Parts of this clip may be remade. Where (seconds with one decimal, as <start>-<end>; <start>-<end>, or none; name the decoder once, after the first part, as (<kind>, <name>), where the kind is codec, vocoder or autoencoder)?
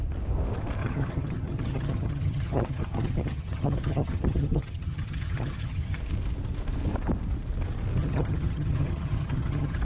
0.8-6.0 (vocoder, HiFi-GAN); 8.0-9.8